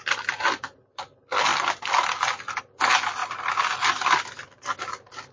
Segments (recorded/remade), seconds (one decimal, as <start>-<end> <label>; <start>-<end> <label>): 0.0-5.3 recorded